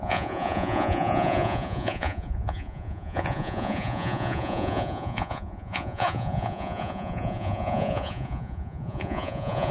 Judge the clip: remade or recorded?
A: remade